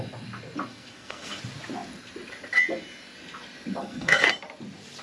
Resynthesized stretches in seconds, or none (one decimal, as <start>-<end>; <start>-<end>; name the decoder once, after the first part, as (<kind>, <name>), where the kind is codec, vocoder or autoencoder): 0.7-1.4 (codec, SNAC); 3.8-4.3